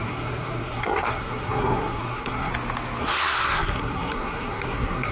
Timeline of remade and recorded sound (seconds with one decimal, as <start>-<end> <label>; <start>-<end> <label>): 0.0-2.5 remade; 2.5-3.0 recorded; 3.0-5.1 remade